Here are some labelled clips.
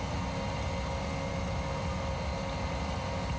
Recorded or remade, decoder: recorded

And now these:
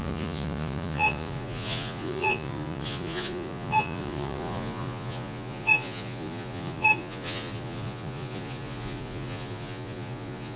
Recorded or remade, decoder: remade, vocoder, Vocos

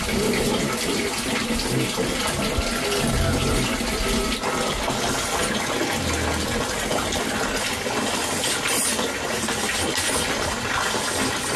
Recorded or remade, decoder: recorded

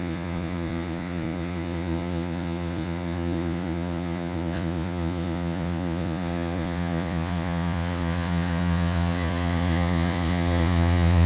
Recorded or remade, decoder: remade, vocoder, Vocos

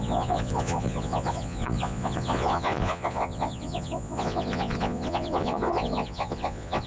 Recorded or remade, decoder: remade, vocoder, Vocos